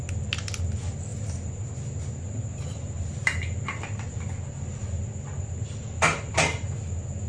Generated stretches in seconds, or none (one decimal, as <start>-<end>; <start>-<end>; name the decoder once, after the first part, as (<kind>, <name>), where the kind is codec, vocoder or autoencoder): none